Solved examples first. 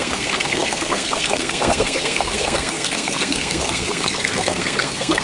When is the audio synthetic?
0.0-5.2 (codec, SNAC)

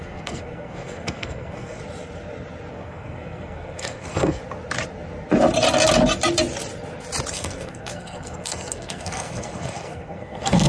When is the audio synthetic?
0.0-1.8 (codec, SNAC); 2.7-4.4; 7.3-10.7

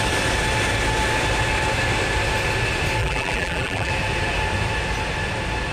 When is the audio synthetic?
3.0-3.9 (vocoder, BigVGAN v2)

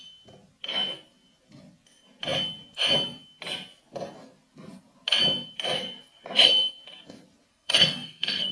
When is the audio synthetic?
7.5-8.5 (codec, SNAC)

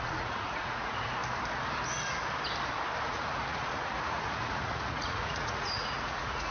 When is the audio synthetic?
0.0-1.2 (vocoder, Vocos); 3.1-6.5